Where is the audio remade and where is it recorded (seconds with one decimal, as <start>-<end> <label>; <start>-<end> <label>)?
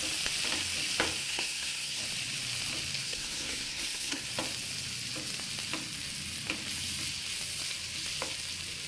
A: 0.0-1.2 recorded; 1.2-2.0 remade; 2.0-3.0 recorded; 3.0-4.3 remade; 4.3-8.9 recorded